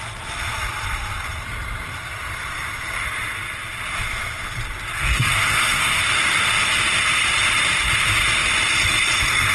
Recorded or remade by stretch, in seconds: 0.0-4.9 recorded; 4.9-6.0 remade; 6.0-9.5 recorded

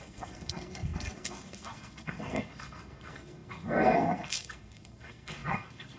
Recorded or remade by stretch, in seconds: 0.0-6.0 remade

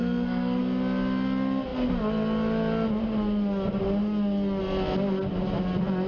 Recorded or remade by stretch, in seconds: 0.0-0.6 remade; 0.6-6.1 recorded

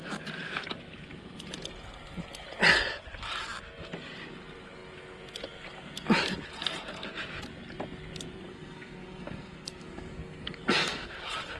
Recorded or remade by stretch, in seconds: 0.0-8.5 recorded; 8.5-11.1 remade; 11.1-11.6 recorded

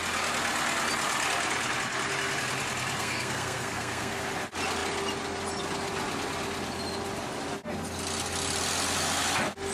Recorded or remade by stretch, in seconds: 0.0-3.0 recorded; 3.0-4.2 remade; 4.2-9.7 recorded

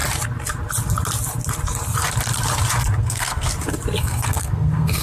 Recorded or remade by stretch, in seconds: 0.0-3.0 recorded; 3.0-3.5 remade; 3.5-4.0 recorded; 4.0-5.0 remade